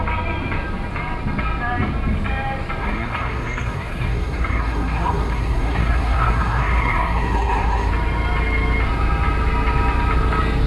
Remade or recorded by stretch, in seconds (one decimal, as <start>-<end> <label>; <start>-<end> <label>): 0.0-2.8 recorded; 2.8-7.9 remade; 7.9-10.7 recorded